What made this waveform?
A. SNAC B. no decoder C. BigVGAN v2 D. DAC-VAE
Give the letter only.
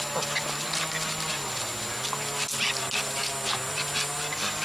B